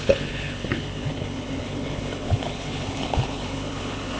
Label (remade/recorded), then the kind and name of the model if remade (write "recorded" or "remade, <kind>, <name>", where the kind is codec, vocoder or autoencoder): remade, codec, HILCodec